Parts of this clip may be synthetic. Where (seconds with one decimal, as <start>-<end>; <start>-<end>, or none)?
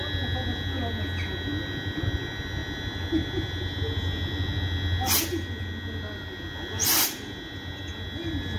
none